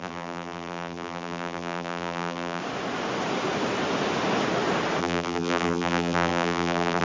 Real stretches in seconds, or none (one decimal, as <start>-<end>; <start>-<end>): 2.6-5.0